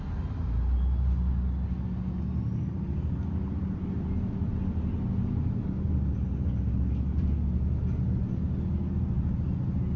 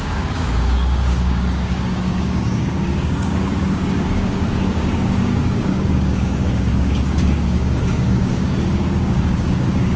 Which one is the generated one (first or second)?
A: second